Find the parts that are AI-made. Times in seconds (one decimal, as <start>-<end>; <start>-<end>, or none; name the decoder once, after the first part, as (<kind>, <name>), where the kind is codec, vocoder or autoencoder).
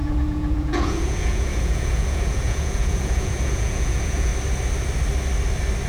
0.0-4.3 (vocoder, Vocos)